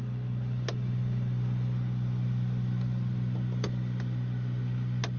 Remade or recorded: recorded